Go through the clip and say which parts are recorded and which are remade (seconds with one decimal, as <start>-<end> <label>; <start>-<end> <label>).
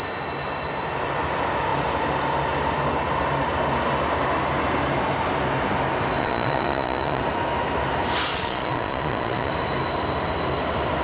0.0-6.2 recorded; 6.2-7.2 remade; 7.2-8.3 recorded; 8.3-9.5 remade; 9.5-11.0 recorded